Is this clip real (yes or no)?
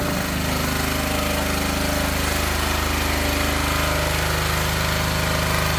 yes